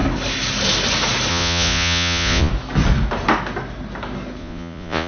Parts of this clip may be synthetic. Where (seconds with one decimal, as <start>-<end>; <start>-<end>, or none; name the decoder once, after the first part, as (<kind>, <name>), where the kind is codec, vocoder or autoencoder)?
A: 1.3-2.5 (vocoder, Vocos); 4.4-5.1